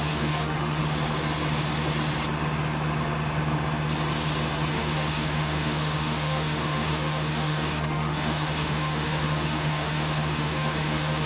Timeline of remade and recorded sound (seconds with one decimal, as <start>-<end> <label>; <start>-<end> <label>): 0.0-0.8 remade; 0.8-4.7 recorded; 4.7-11.3 remade